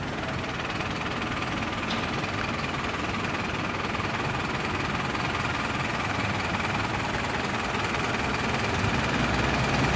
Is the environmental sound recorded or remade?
recorded